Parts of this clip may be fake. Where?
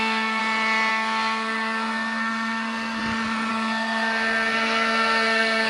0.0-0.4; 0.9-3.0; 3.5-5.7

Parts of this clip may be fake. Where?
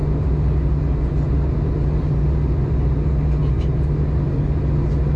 none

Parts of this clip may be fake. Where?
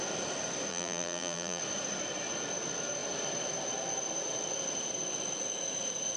0.7-1.6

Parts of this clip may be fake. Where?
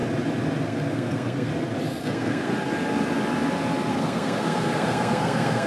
0.6-1.5; 2.0-2.5; 3.9-5.7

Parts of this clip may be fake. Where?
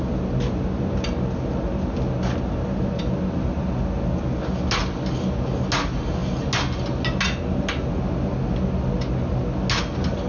none